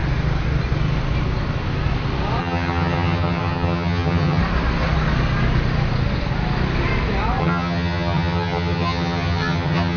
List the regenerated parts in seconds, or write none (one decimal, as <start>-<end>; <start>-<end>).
2.4-4.4; 7.4-10.0